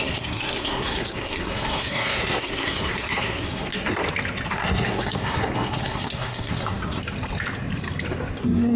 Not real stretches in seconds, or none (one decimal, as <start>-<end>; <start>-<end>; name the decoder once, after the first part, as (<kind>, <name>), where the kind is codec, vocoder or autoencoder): 0.0-4.0 (codec, SNAC); 4.5-7.0; 8.4-8.8